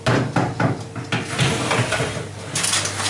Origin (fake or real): real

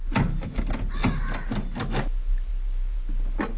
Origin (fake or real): real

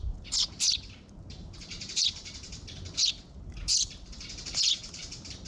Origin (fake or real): fake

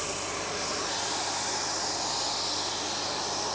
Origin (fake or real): real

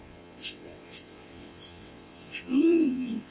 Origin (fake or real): fake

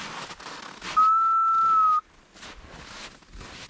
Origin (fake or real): real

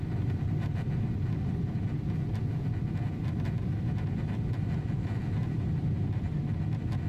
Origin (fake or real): real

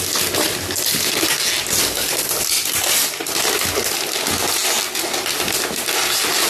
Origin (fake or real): real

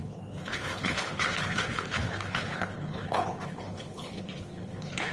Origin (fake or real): fake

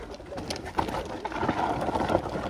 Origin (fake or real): real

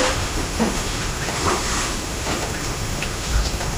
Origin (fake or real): fake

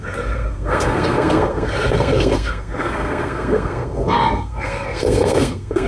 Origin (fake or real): fake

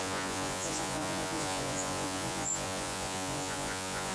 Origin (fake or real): fake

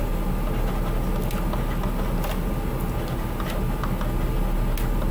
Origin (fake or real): real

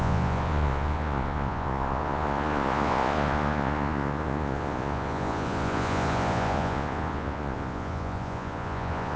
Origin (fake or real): fake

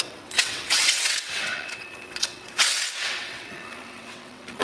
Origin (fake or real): fake